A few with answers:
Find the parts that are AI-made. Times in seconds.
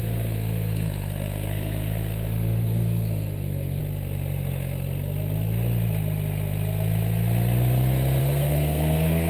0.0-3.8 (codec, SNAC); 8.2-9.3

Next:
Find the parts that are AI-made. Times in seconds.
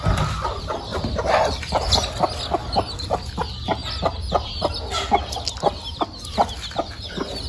0.9-2.1 (vocoder, BigVGAN v2); 2.6-3.2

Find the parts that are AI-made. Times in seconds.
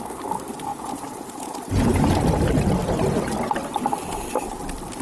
0.7-2.3 (vocoder, Vocos)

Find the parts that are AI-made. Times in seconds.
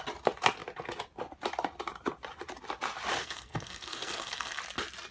3.2-4.6 (codec, SNAC)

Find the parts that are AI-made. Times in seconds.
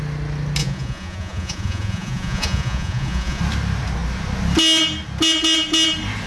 0.6-3.4 (vocoder, Vocos)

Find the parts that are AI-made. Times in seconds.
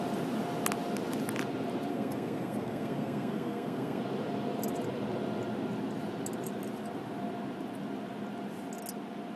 1.9-4.0 (codec, SNAC)